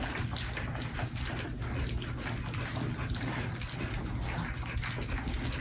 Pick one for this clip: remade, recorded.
recorded